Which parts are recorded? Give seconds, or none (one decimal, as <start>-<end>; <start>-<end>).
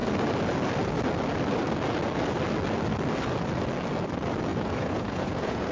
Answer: 0.0-4.5